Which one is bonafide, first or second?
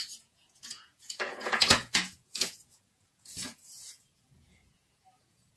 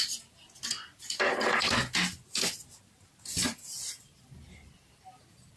second